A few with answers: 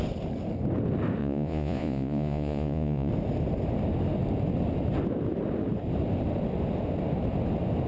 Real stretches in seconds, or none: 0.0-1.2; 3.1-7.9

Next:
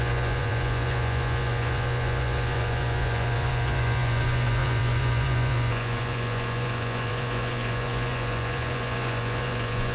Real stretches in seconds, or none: none